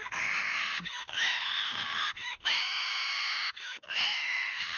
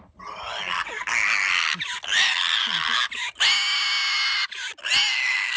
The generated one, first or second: first